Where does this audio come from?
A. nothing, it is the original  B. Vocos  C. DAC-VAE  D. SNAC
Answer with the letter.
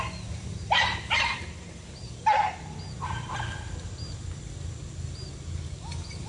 A